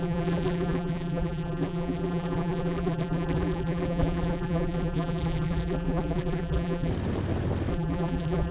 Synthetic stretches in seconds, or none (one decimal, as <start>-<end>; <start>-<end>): 0.0-6.9; 7.7-8.5